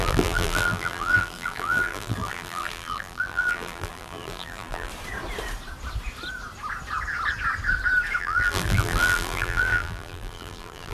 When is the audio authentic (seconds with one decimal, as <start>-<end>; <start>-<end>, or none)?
4.9-8.2